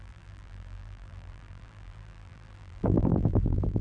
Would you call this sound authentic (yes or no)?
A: no